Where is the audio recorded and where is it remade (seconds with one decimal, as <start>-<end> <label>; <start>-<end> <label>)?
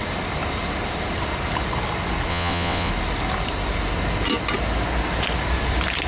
0.0-2.3 recorded; 2.3-2.9 remade; 2.9-6.1 recorded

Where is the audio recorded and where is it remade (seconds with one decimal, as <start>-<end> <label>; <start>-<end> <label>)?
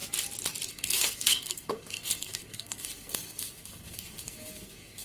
0.0-0.7 recorded; 0.7-5.0 remade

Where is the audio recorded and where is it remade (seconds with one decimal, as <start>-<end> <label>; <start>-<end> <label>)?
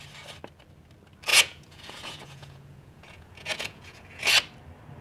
0.0-1.3 recorded; 1.3-4.3 remade; 4.3-5.0 recorded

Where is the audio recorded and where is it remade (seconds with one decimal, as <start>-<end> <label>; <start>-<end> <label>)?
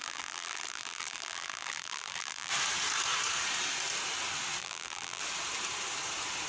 0.0-2.5 remade; 2.5-4.6 recorded; 4.6-5.2 remade; 5.2-6.5 recorded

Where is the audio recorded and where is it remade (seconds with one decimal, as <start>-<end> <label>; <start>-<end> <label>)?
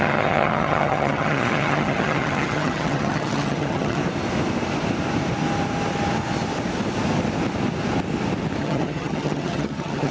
0.0-4.0 remade; 4.0-8.6 recorded; 8.6-10.1 remade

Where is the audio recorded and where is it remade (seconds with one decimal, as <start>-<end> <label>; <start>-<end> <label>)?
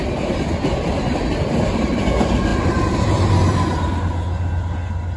0.0-5.2 recorded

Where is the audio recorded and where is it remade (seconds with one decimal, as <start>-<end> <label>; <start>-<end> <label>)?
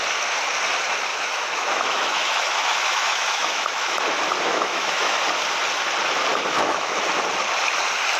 0.0-1.1 recorded; 1.1-4.0 remade; 4.0-4.5 recorded; 4.5-5.2 remade; 5.2-6.3 recorded; 6.3-7.0 remade; 7.0-8.2 recorded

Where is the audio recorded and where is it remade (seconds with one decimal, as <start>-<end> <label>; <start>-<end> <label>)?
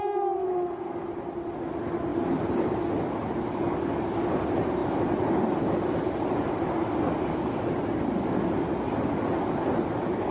0.0-10.3 recorded